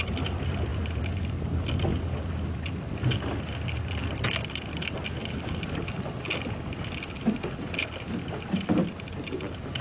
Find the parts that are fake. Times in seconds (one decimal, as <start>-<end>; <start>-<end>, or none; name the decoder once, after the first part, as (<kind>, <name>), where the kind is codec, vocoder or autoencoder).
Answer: none